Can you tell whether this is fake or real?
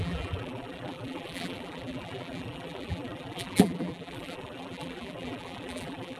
fake